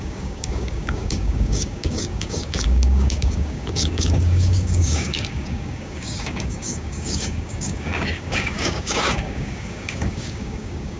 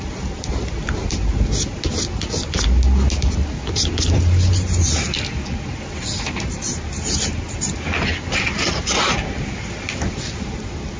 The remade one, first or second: first